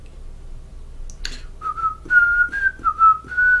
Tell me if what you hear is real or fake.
real